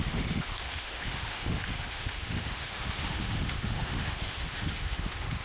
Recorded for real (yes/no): no